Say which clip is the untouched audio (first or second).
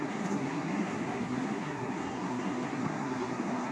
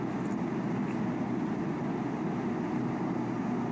second